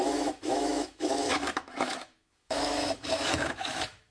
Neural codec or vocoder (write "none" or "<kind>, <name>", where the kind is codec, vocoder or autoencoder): autoencoder, DAC-VAE